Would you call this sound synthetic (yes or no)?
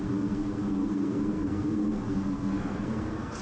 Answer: yes